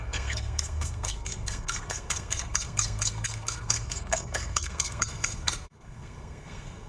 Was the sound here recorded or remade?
remade